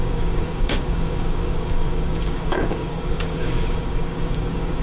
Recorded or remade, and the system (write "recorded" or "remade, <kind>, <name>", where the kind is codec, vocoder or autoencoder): remade, codec, DAC